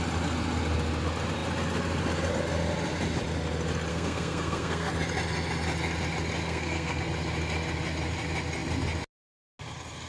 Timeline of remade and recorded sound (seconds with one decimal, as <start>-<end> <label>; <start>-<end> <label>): 0.0-3.9 recorded; 3.9-4.9 remade; 4.9-6.4 recorded; 6.4-7.0 remade; 7.0-10.1 recorded